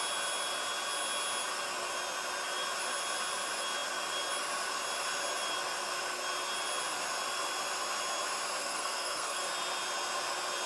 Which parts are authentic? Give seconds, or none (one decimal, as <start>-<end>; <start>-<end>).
0.0-8.6; 9.4-10.7